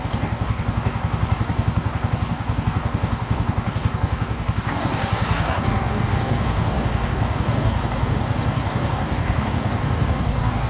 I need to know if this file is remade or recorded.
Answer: remade